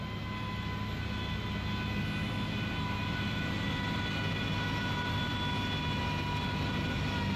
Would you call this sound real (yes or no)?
yes